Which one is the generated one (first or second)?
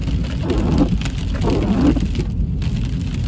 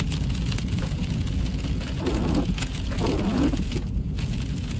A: second